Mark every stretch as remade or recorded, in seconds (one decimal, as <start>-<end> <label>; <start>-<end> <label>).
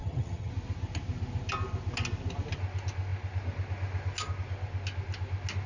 0.0-0.5 remade; 0.5-5.7 recorded